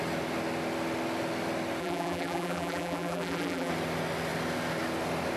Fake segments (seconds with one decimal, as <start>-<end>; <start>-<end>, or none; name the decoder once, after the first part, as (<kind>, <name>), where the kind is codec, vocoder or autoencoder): 1.8-3.7 (vocoder, BigVGAN v2)